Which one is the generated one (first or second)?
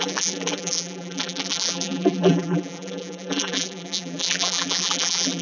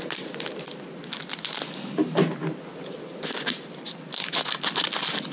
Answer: first